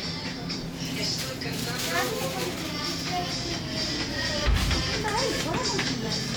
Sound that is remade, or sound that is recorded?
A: remade